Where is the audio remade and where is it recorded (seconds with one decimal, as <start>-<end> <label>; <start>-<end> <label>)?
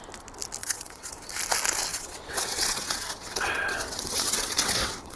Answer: 0.0-0.6 recorded; 0.6-1.1 remade; 1.1-1.9 recorded; 1.9-5.2 remade